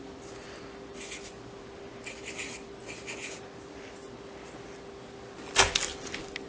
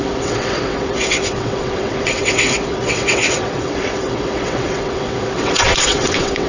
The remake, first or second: second